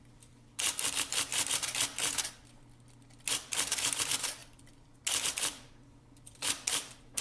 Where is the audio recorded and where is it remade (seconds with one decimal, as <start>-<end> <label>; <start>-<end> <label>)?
0.0-1.3 remade; 1.3-3.3 recorded; 3.3-7.2 remade